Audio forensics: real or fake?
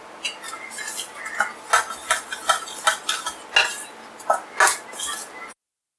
real